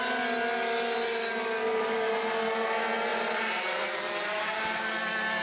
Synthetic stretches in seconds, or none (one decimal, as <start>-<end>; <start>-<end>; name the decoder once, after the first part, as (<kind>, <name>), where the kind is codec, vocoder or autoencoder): 3.1-4.8 (vocoder, BigVGAN v2)